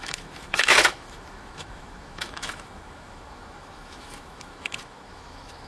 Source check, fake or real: fake